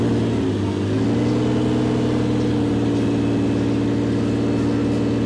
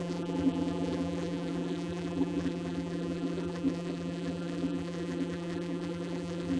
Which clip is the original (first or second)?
first